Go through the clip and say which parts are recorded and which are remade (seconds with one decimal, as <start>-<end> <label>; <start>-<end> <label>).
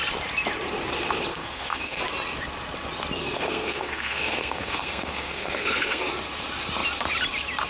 0.0-1.3 recorded; 1.3-2.0 remade; 2.0-3.2 recorded; 3.2-6.1 remade; 6.1-7.7 recorded